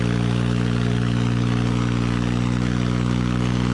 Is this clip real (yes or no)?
yes